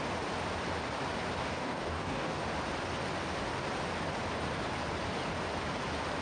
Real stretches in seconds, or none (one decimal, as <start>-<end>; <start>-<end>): 0.0-1.5; 2.4-6.2